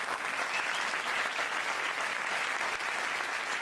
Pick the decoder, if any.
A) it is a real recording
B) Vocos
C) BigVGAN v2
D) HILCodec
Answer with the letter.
A